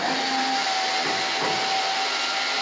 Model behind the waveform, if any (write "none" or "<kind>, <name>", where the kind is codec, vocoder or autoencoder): none